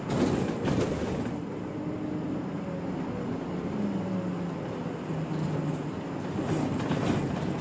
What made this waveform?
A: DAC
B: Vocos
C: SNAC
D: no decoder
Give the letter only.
D